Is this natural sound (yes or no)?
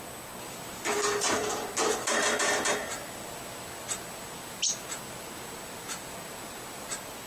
yes